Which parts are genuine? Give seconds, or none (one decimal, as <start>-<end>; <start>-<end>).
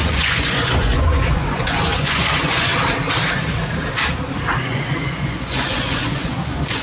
2.7-4.6